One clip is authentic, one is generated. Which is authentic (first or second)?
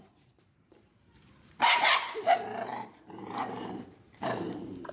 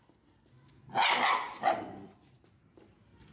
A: second